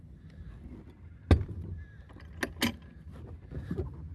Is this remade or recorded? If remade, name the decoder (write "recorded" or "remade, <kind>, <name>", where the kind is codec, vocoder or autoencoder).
recorded